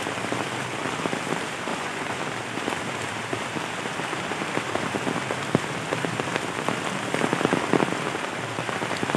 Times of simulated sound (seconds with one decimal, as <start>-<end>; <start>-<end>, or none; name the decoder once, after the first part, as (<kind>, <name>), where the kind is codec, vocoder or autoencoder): 1.7-2.2 (vocoder, Vocos)